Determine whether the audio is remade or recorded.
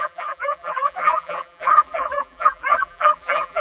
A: remade